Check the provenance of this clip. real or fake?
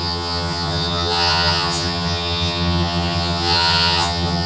fake